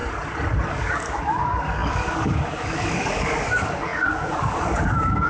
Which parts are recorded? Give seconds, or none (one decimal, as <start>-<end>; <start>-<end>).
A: 0.0-0.7